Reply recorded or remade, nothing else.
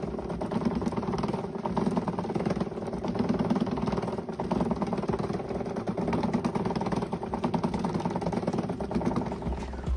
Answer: recorded